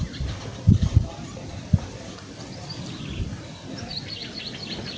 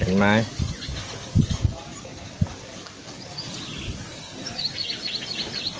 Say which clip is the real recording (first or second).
second